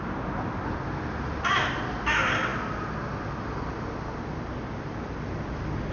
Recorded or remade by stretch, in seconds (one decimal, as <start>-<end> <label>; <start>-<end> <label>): 0.0-5.9 recorded